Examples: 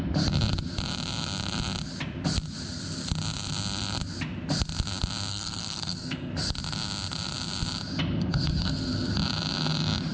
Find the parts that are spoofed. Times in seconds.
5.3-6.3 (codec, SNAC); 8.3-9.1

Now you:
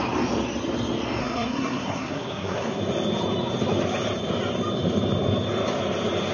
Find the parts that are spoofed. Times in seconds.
1.2-2.8 (codec, SNAC)

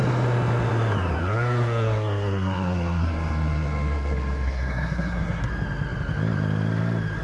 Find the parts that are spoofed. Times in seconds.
1.2-5.5 (codec, SNAC)

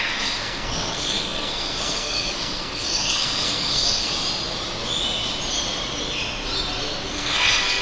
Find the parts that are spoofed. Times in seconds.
0.0-4.1 (codec, SNAC); 7.1-7.8

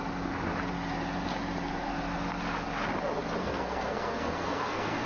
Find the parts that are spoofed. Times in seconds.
3.4-5.1 (codec, SNAC)

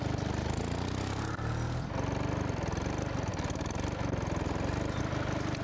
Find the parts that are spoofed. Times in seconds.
none

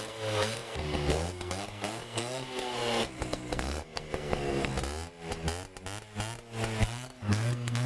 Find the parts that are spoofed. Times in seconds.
0.0-4.7 (codec, SNAC); 6.8-7.9

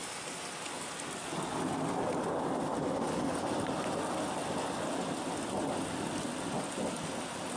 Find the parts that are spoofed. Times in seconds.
none